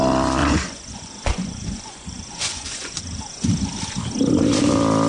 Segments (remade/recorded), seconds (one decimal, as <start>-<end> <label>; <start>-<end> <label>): 0.0-0.4 recorded; 0.4-3.5 remade; 3.5-5.1 recorded